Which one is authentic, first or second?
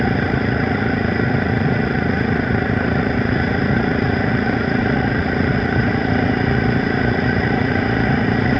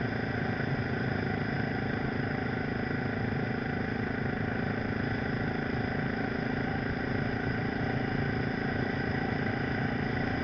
second